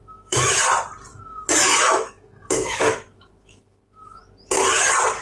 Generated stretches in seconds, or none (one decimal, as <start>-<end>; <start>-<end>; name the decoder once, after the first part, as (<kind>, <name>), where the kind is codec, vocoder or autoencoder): 0.0-0.6 (autoencoder, DAC-VAE); 1.1-4.2